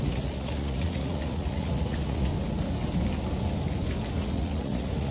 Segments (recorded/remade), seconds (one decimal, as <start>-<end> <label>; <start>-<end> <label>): 0.0-2.3 remade; 2.3-4.2 recorded; 4.2-5.1 remade